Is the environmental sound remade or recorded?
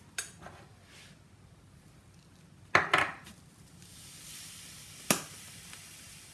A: recorded